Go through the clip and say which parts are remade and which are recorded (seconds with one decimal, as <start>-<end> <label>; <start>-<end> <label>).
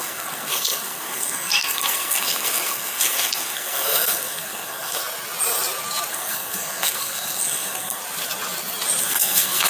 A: 0.0-5.0 remade; 5.0-6.1 recorded; 6.1-8.0 remade; 8.0-9.0 recorded; 9.0-9.7 remade